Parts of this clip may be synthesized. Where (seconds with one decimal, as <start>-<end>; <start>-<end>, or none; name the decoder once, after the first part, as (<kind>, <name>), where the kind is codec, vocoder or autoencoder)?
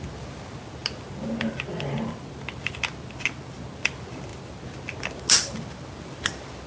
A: none